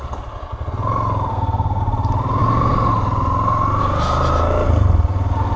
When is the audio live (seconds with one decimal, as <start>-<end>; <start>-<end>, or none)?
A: 0.0-1.3; 1.8-5.6